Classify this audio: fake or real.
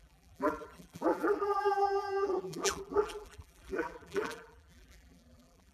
fake